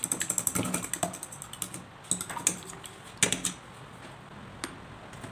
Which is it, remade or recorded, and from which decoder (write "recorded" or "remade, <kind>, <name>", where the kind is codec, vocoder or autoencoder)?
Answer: recorded